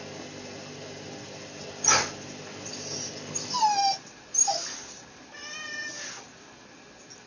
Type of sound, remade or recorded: recorded